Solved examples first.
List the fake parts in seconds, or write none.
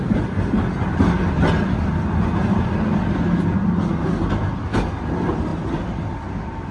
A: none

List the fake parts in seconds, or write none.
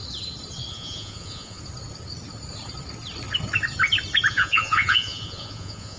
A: 0.7-1.6 (vocoder, Vocos); 4.3-6.0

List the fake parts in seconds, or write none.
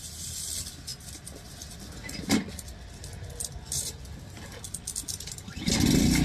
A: none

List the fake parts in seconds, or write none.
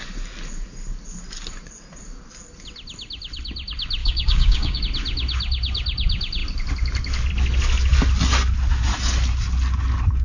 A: 4.0-4.8 (codec, DAC)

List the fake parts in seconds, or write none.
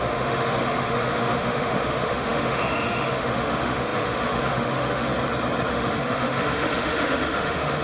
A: 0.0-5.1 (autoencoder, DAC-VAE); 5.7-7.8